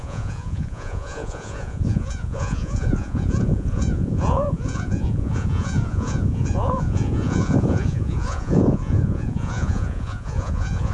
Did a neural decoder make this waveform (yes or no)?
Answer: yes